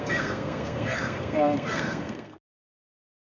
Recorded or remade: remade